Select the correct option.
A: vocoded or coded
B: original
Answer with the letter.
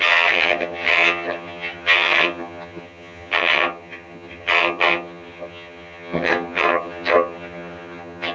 A